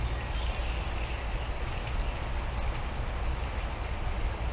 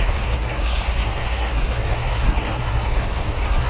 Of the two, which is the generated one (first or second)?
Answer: second